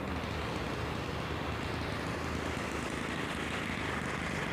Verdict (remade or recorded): recorded